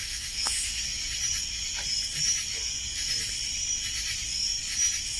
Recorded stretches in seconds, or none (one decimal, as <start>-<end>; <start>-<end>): 0.8-5.2